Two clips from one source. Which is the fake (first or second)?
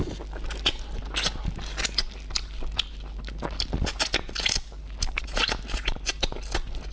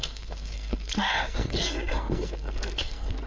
second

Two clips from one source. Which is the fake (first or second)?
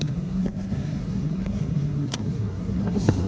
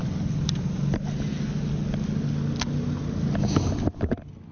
first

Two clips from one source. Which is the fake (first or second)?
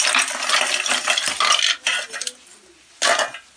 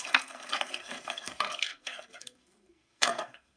second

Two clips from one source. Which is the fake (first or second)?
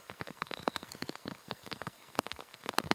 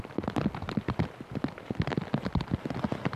first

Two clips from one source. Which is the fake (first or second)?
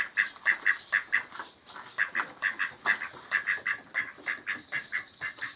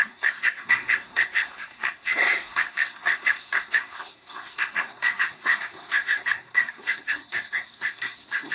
second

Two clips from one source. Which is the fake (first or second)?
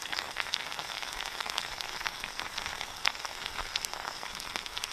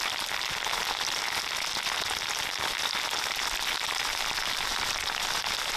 first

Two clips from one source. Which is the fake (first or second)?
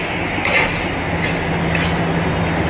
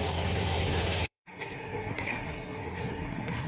second